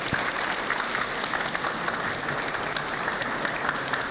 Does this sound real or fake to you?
real